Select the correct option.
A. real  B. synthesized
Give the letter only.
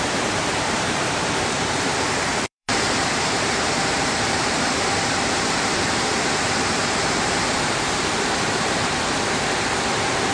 B